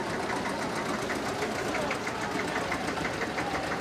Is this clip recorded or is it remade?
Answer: recorded